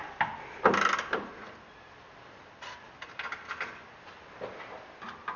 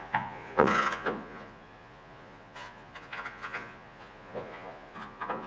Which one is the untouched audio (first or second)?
first